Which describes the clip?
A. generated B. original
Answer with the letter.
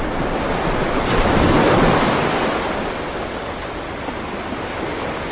B